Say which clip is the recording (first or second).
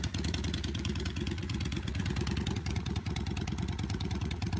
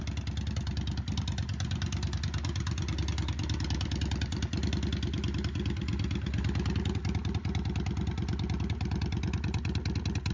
second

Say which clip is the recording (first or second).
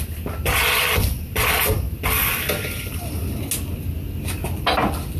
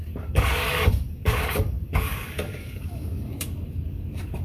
first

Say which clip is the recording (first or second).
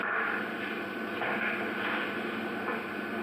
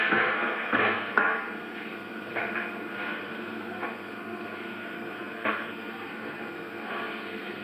first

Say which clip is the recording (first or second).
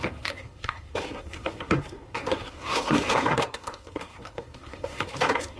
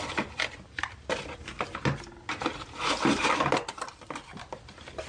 second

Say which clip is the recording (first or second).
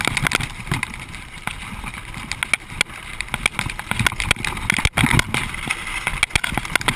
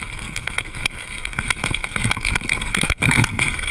first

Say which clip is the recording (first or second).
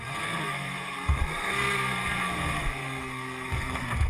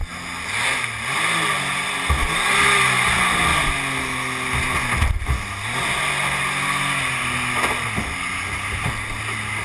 second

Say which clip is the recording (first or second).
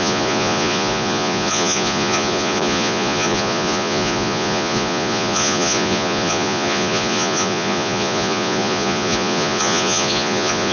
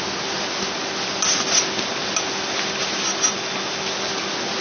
second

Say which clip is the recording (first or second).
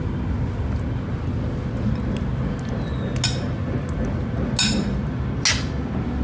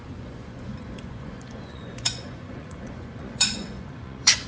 first